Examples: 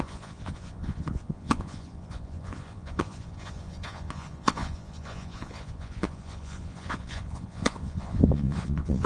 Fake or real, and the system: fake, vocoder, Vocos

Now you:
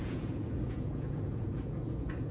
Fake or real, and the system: fake, vocoder, Vocos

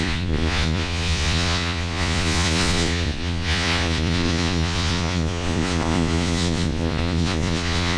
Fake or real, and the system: fake, vocoder, Vocos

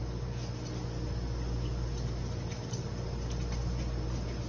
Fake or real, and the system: real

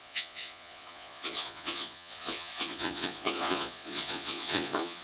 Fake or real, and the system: fake, vocoder, Vocos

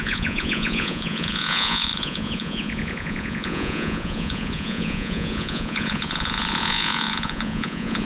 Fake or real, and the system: fake, vocoder, Vocos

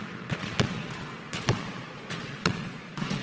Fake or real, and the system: fake, vocoder, Vocos